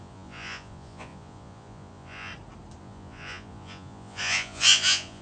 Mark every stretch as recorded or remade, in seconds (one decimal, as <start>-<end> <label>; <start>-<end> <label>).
0.0-2.3 remade; 2.3-2.8 recorded; 2.8-5.2 remade